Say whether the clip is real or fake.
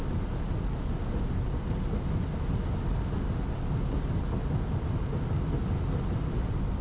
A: real